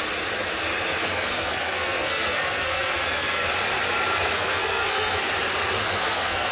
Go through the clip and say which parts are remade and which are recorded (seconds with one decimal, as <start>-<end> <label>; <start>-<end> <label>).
0.0-1.0 recorded; 1.0-3.5 remade; 3.5-4.1 recorded; 4.1-5.3 remade; 5.3-5.8 recorded; 5.8-6.5 remade